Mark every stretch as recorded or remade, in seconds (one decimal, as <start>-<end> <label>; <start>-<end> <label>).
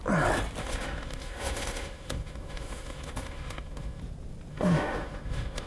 0.0-0.6 recorded; 0.6-4.0 remade; 4.0-4.5 recorded; 4.5-5.7 remade